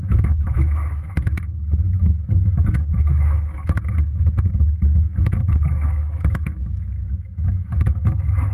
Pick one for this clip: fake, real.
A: fake